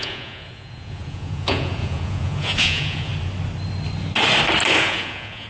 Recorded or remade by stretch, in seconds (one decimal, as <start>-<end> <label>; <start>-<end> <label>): 0.0-3.1 remade; 3.1-4.8 recorded; 4.8-5.5 remade